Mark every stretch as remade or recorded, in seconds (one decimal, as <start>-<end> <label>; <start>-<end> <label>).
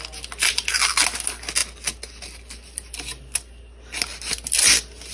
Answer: 0.0-5.1 recorded